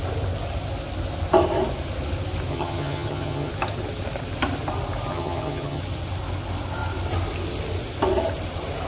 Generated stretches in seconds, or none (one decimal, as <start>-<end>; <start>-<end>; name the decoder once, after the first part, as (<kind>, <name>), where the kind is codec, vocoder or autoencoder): 2.5-3.5 (vocoder, HiFi-GAN); 5.1-5.8